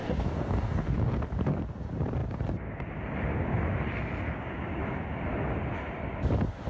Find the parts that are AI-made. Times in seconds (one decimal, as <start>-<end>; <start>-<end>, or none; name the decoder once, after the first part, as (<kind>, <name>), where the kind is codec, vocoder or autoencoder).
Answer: 0.0-1.1 (codec, DAC)